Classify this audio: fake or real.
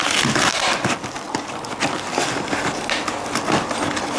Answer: real